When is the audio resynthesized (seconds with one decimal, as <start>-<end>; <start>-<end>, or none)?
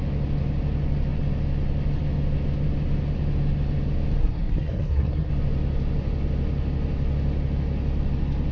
4.2-5.3